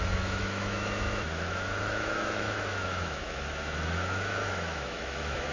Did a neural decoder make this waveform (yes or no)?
yes